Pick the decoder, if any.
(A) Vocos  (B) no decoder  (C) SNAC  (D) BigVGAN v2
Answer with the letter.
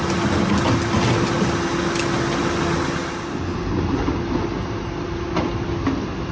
B